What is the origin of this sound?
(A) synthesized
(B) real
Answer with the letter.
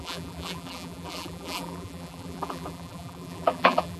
A